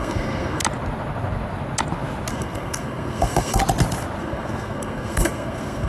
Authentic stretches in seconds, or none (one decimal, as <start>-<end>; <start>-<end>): 0.6-2.3; 3.6-4.2